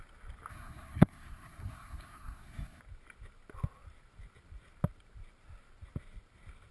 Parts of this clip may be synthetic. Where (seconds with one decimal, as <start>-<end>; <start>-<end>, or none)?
0.5-2.8